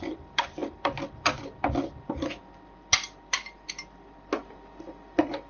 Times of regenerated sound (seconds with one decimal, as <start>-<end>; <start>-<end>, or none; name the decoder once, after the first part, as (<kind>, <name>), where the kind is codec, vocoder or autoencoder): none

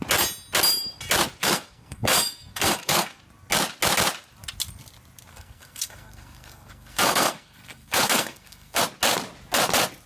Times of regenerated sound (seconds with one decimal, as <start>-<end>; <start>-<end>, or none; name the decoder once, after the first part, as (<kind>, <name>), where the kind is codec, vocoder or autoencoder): 1.4-3.2 (codec, SNAC); 5.3-8.8

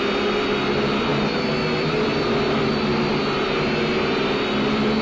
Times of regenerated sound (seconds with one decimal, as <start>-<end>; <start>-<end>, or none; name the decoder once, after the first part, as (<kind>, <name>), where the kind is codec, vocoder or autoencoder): none

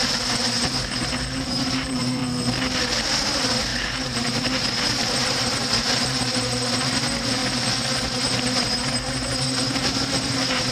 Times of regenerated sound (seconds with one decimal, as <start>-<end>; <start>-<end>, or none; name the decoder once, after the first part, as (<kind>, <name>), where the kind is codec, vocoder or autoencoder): 0.0-2.2 (vocoder, BigVGAN v2); 3.2-7.4; 8.0-10.7